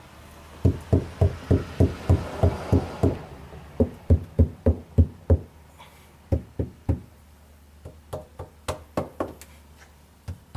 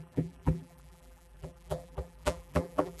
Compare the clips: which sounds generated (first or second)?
second